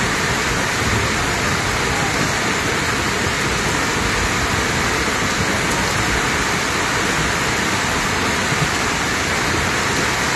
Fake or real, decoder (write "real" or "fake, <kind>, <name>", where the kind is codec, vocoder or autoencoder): real